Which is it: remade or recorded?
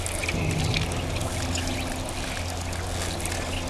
recorded